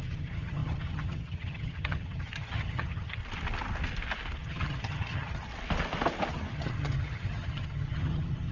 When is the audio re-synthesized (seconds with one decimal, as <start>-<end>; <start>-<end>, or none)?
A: 0.0-3.2; 4.4-5.5; 6.3-8.5